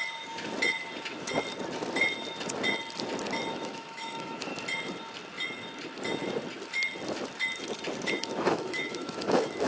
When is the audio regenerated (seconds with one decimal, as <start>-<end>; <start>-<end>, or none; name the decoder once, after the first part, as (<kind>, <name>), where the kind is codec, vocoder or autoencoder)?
3.5-4.5 (autoencoder, DAC-VAE); 8.1-9.7